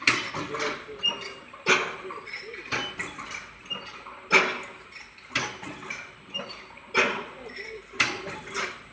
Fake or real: real